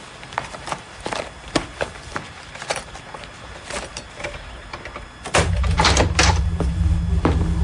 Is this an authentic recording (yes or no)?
yes